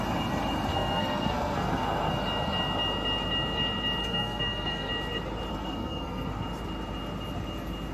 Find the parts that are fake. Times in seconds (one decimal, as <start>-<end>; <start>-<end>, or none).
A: 0.7-2.1; 4.0-4.9; 5.5-6.4